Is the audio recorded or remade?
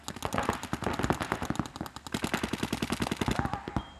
recorded